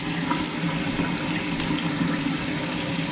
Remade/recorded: recorded